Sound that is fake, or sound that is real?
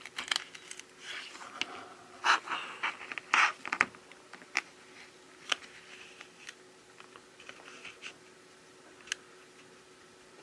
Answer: real